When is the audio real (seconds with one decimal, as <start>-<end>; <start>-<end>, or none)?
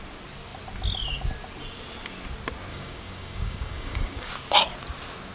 0.0-2.7; 4.3-5.3